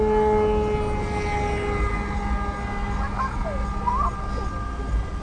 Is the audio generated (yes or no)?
no